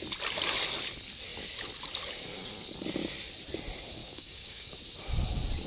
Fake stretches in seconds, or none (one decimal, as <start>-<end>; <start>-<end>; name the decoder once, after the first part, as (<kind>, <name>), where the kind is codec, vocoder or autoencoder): 4.0-4.7 (codec, DAC)